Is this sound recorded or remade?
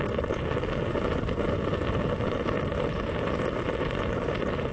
recorded